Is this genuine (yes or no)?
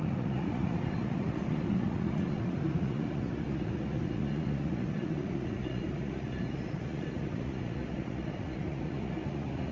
no